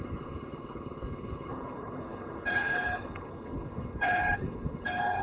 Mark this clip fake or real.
fake